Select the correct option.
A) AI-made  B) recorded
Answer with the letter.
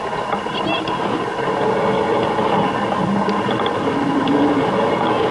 B